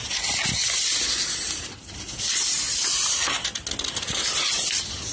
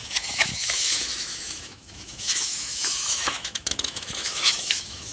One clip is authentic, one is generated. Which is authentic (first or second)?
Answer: first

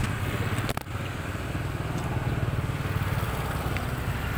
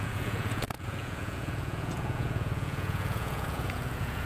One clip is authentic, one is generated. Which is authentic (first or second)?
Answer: first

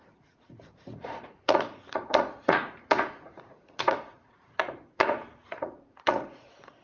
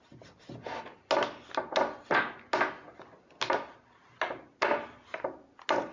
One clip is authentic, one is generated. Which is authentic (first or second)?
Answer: second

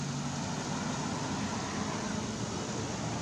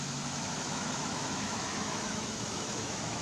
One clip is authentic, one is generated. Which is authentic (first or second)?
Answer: first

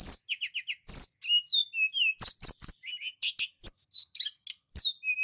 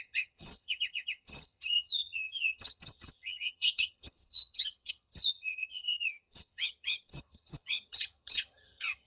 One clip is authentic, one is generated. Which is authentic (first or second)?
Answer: first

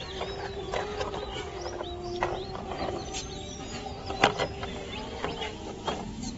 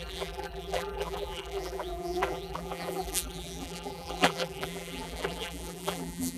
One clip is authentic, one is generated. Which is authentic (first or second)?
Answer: first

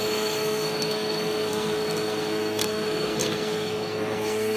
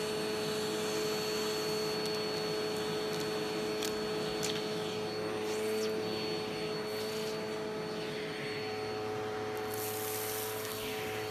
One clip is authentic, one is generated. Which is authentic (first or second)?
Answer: second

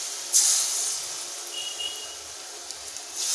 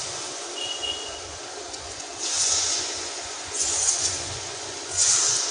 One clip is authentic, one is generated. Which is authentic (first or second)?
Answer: first